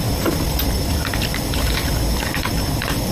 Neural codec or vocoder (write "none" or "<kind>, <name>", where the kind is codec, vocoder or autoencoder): vocoder, BigVGAN v2